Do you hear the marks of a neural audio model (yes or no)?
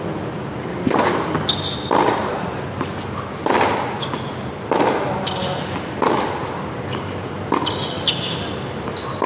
no